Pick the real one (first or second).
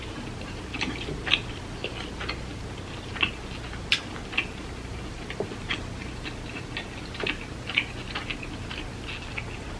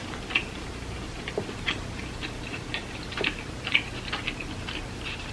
first